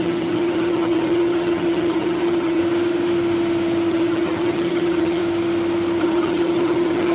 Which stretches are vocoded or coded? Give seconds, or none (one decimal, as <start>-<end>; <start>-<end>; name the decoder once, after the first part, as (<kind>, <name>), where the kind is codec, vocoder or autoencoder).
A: 0.0-2.6 (vocoder, HiFi-GAN); 3.9-5.2; 6.0-7.1